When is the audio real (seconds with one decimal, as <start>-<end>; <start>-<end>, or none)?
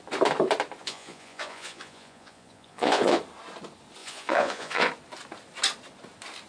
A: 0.0-0.8; 3.2-4.0; 4.9-6.5